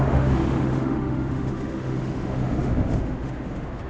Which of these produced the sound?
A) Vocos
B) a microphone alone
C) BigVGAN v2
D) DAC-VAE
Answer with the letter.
D